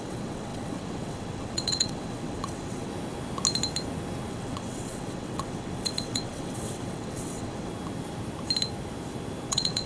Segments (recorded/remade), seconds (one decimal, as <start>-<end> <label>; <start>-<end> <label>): 0.0-2.9 remade; 2.9-4.3 recorded; 4.3-7.7 remade; 7.7-9.5 recorded; 9.5-9.9 remade

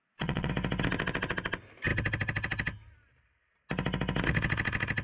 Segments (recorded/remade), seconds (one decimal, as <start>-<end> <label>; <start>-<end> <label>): 0.0-0.5 remade; 0.5-5.0 recorded

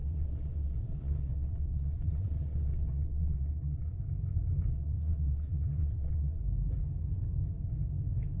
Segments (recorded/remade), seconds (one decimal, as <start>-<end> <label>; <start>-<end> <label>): 0.0-3.9 remade; 3.9-4.7 recorded; 4.7-6.4 remade; 6.4-8.4 recorded

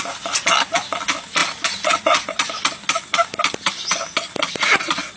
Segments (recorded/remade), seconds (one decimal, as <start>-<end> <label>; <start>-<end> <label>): 0.0-5.2 recorded

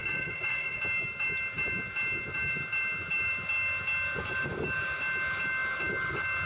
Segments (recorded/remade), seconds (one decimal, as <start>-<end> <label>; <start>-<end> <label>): 0.0-0.8 remade; 0.8-6.5 recorded